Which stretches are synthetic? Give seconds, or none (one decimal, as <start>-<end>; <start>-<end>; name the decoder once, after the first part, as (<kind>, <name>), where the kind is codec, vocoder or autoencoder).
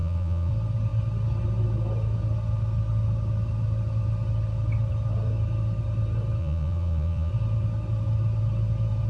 0.0-0.5 (vocoder, Vocos); 6.4-7.3